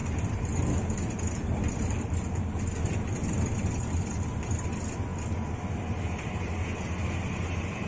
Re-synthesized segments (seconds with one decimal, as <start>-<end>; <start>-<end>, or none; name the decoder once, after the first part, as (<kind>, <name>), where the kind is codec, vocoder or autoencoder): 0.0-2.6 (vocoder, BigVGAN v2); 5.1-6.3

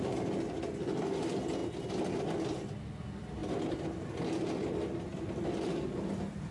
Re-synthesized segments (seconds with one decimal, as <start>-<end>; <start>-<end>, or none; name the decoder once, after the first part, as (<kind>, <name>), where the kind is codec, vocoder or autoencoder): none

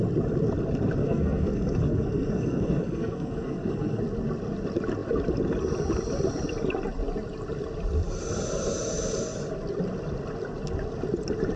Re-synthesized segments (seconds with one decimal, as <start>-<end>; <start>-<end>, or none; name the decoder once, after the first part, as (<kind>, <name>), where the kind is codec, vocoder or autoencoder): 1.0-4.0 (codec, SNAC)

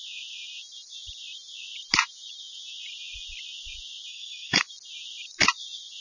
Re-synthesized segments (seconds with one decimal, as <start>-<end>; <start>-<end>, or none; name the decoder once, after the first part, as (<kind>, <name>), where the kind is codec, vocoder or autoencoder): 4.1-4.6 (autoencoder, DAC-VAE)